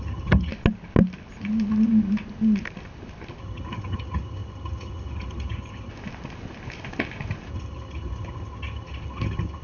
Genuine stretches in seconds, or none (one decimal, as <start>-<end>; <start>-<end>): 0.5-3.4; 5.9-7.5